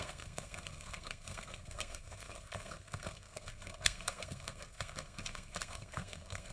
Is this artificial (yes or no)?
yes